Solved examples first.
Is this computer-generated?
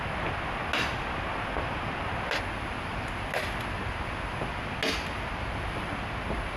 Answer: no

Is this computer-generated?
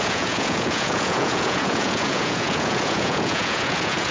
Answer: yes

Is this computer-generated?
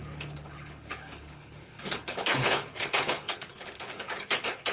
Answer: yes